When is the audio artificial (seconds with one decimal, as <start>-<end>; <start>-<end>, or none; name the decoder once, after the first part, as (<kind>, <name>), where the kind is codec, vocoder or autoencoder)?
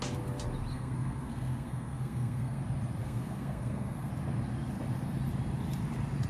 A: 0.7-2.6 (codec, SNAC); 3.0-4.1